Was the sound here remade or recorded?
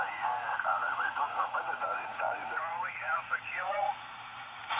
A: remade